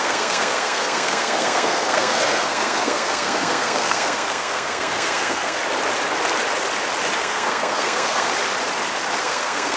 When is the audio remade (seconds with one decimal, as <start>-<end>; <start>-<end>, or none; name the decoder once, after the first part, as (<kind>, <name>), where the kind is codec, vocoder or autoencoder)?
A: 0.0-5.6 (codec, SNAC); 7.2-8.3; 9.2-9.8